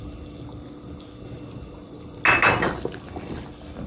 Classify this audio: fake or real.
real